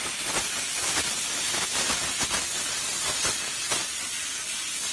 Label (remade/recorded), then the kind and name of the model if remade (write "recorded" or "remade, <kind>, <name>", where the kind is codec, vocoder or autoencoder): recorded